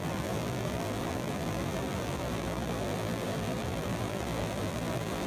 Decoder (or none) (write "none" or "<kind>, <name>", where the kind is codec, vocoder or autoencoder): vocoder, BigVGAN v2